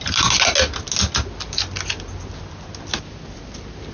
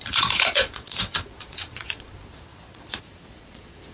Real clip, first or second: first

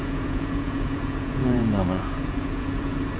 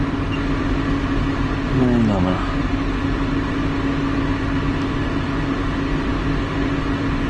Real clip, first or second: second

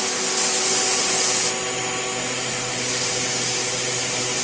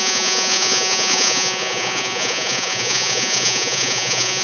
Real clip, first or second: first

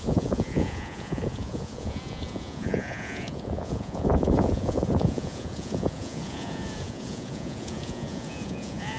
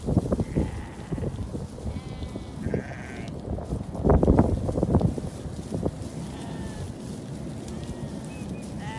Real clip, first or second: second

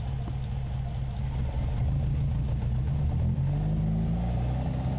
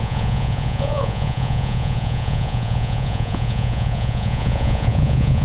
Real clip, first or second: first